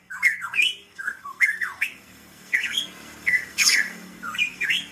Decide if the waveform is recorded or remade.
remade